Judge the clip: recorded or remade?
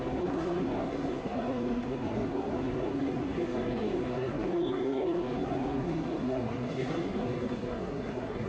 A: remade